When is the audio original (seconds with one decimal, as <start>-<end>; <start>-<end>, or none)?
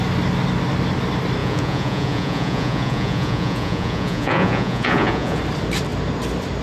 0.0-1.4; 5.4-6.6